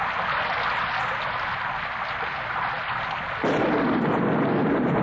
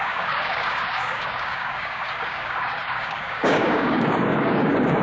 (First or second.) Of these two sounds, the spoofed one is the second